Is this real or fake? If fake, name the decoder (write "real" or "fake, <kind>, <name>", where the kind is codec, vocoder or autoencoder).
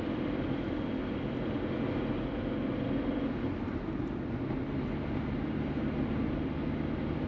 real